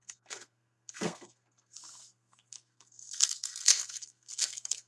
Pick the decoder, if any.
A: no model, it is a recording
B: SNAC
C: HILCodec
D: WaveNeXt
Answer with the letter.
B